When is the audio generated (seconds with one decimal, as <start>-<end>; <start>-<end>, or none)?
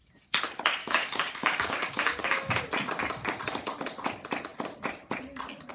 0.8-2.6